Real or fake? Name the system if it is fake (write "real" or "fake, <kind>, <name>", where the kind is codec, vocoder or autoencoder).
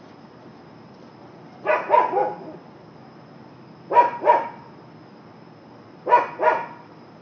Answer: real